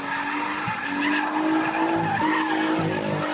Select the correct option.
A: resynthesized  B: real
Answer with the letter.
B